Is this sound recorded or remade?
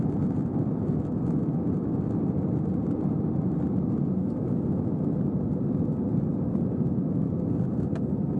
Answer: recorded